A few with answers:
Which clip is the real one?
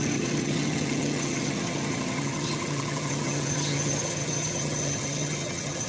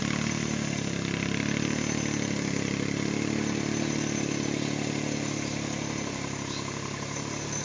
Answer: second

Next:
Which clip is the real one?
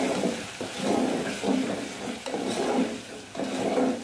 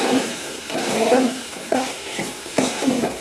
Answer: first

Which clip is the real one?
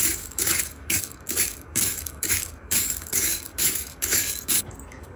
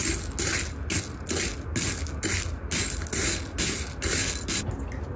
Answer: second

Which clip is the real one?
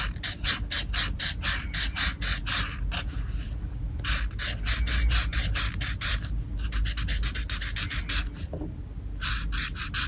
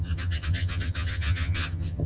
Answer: first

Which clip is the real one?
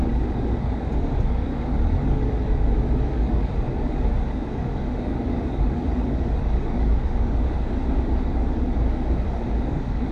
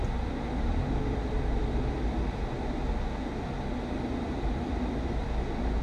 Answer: second